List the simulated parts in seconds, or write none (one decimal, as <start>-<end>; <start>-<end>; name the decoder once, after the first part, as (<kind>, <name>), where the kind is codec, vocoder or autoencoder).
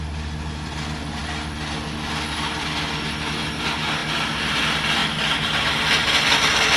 none